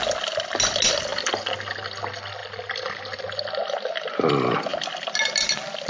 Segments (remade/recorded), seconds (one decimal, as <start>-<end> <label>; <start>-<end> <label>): 0.0-5.9 recorded